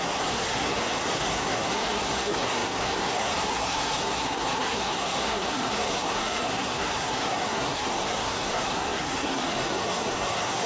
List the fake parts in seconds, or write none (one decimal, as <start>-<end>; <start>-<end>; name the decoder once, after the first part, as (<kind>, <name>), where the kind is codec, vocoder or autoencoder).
0.0-10.7 (codec, SNAC)